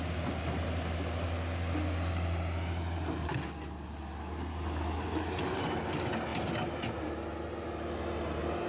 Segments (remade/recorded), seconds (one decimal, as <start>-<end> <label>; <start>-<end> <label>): 0.0-8.7 recorded